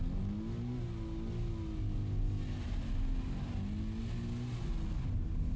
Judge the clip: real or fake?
real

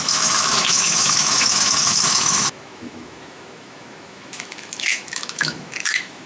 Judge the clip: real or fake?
fake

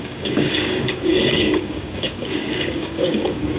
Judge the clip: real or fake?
fake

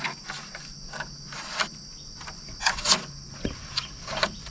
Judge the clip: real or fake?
real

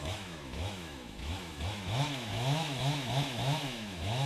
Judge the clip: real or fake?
fake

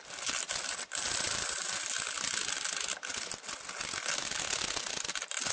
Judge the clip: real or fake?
real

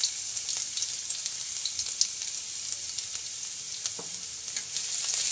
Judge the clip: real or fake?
real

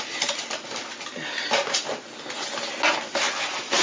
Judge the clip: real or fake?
real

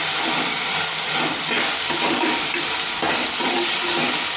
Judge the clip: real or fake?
real